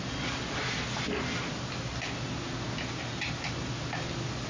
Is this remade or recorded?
recorded